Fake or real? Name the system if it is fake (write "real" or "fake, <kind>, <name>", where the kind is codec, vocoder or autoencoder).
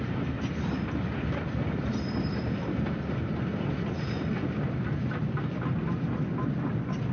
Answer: real